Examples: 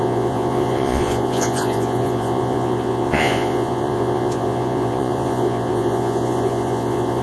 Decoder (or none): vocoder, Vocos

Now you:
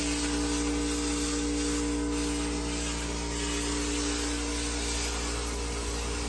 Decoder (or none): none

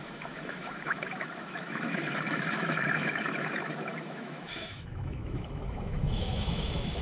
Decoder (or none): autoencoder, DAC-VAE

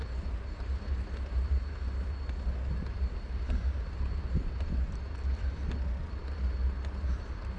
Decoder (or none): none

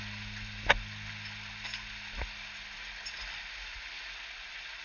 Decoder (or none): none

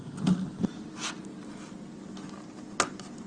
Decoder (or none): none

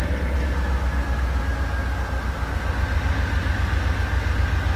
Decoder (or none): none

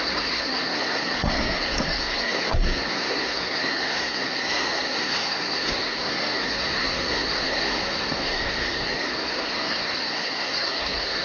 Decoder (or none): codec, SNAC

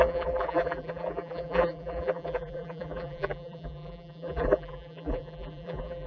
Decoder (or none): vocoder, BigVGAN v2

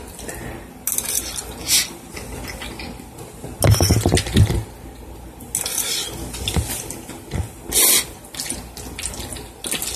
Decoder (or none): none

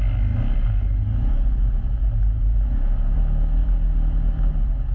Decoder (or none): none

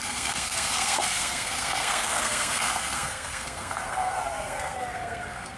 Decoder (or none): codec, SNAC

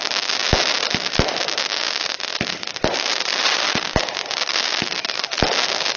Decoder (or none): none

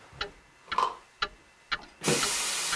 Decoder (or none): none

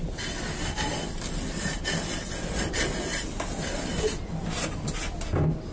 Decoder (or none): none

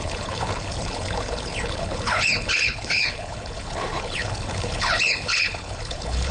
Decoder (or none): codec, HILCodec